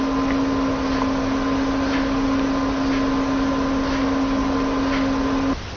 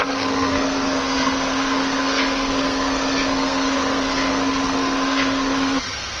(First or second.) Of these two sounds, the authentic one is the first